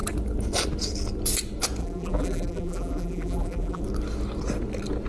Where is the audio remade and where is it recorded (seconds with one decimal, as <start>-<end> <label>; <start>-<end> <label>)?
0.0-1.8 recorded; 1.8-3.8 remade; 3.8-5.1 recorded